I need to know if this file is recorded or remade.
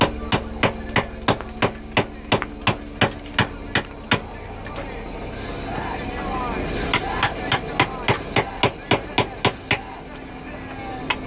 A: recorded